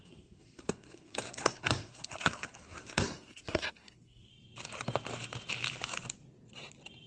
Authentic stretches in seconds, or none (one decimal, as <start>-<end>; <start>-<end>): 4.3-7.1